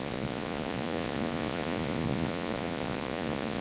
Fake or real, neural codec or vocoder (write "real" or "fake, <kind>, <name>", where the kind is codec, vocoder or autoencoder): fake, vocoder, Vocos